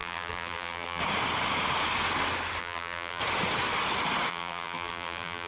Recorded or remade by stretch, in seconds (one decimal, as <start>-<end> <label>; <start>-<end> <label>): 0.0-1.0 remade; 1.0-2.6 recorded; 2.6-3.2 remade; 3.2-4.3 recorded; 4.3-5.5 remade